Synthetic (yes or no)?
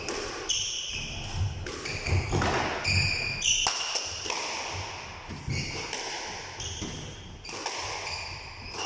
no